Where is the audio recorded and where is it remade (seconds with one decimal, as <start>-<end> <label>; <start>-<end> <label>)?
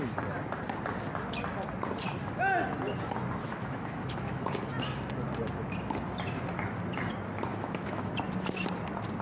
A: 0.0-3.4 recorded; 3.4-4.4 remade; 4.4-7.5 recorded; 7.5-8.1 remade; 8.1-9.2 recorded